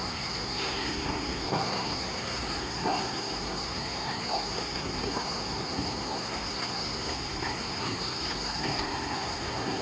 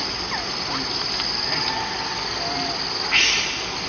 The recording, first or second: second